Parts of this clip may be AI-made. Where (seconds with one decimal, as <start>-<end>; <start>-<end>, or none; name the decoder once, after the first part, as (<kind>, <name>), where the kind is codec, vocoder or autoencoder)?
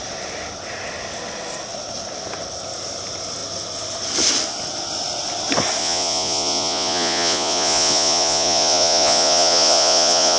5.8-10.4 (vocoder, Vocos)